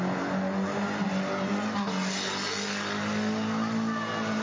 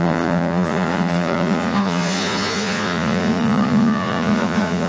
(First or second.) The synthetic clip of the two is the second